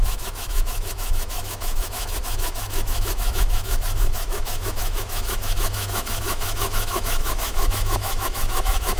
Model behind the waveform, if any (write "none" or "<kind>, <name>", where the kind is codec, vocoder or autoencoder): autoencoder, DAC-VAE